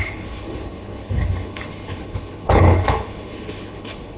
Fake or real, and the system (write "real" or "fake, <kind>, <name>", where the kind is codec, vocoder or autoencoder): fake, codec, HILCodec